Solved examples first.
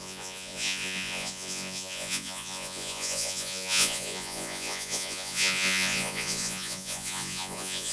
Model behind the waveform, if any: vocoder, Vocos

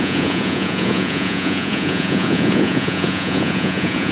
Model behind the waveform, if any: vocoder, Vocos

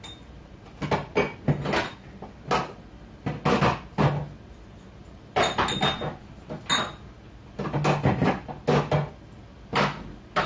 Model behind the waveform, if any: none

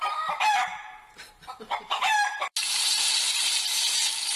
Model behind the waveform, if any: vocoder, BigVGAN v2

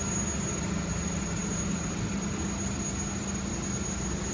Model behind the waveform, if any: none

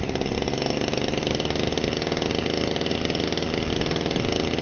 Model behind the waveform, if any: none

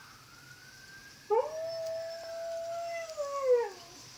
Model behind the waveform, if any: none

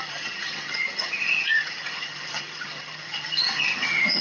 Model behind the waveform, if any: vocoder, HiFi-GAN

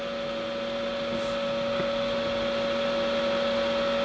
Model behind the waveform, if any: none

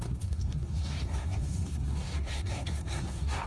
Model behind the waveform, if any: codec, SNAC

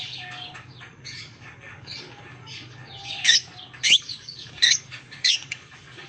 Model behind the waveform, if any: codec, DAC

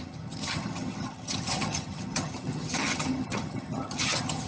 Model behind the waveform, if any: vocoder, HiFi-GAN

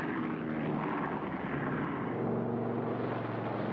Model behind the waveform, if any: none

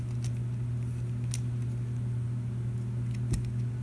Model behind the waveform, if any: none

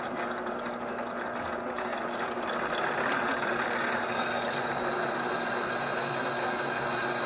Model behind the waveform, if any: none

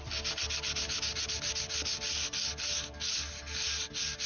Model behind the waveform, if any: none